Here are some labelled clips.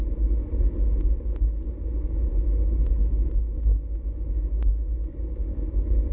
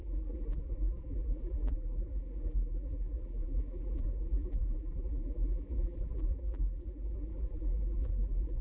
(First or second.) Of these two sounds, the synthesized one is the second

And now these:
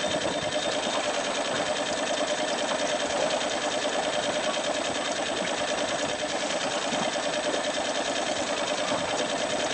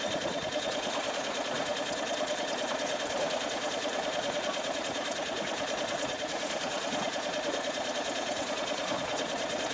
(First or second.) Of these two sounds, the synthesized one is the second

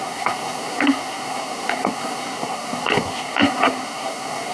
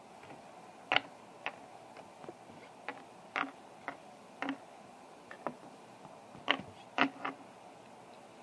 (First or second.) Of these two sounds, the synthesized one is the first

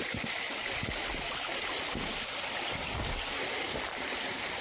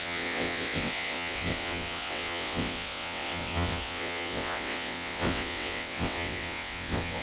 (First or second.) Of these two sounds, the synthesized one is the second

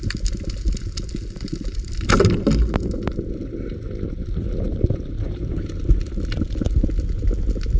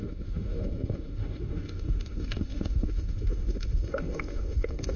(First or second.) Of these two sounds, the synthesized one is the second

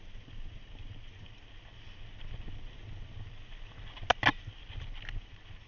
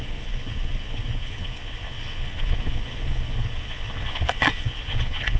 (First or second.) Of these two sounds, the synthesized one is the second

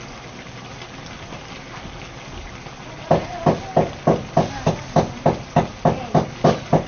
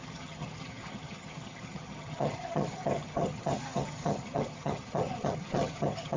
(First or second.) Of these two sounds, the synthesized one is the second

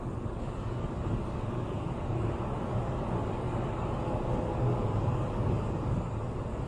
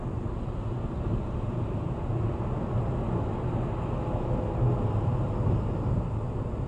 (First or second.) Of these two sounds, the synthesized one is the first